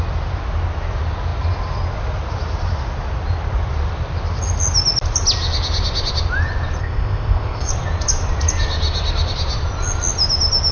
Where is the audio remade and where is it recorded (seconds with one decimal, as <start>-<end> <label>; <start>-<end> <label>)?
0.0-6.8 recorded; 6.8-7.7 remade; 7.7-10.7 recorded